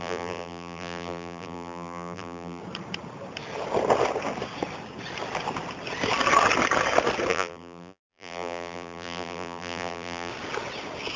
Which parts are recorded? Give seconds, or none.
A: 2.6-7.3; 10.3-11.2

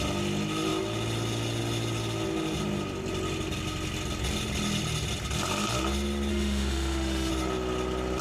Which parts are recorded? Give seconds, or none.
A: 0.0-6.3; 7.3-8.2

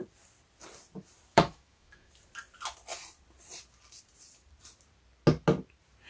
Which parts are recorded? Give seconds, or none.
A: 0.0-1.3; 2.1-6.1

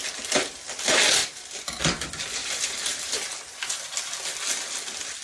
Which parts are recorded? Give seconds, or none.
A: 0.0-1.2; 1.8-2.4; 3.1-5.2

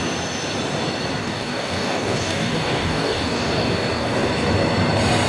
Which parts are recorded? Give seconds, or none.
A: 0.0-1.2; 4.3-5.3